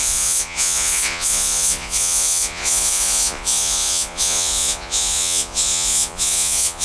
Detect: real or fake fake